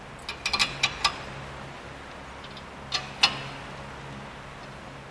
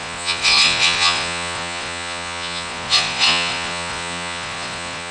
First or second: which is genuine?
first